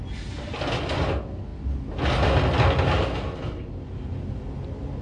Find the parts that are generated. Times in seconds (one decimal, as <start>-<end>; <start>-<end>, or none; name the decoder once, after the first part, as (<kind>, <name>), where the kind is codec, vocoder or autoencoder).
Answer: none